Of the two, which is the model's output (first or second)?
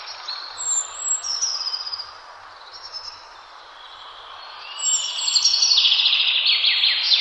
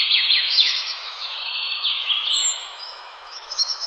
second